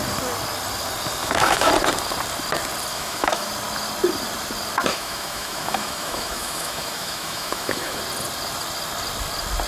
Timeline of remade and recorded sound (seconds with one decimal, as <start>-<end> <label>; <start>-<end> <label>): 0.0-1.2 recorded; 1.2-1.7 remade; 1.7-2.9 recorded; 2.9-3.5 remade; 3.5-4.9 recorded; 4.9-8.0 remade; 8.0-9.7 recorded